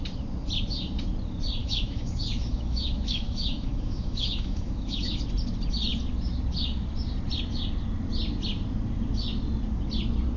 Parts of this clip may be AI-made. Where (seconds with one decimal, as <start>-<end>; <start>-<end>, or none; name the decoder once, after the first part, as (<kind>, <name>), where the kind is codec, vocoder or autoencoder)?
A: 1.6-5.2 (autoencoder, DAC-VAE)